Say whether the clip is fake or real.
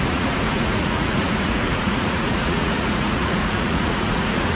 fake